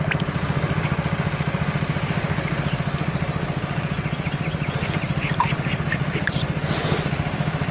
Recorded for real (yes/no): yes